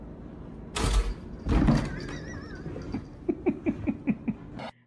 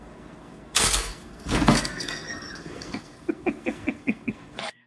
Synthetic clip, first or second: second